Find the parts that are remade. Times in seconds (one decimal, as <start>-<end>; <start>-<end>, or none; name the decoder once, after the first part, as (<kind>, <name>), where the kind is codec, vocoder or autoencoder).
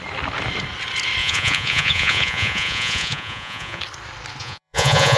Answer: 1.2-3.8 (vocoder, Vocos); 4.4-5.2